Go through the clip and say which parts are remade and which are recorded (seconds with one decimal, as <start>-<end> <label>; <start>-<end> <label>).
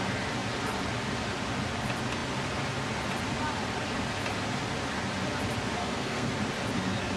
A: 0.0-5.8 recorded; 5.8-6.3 remade; 6.3-7.2 recorded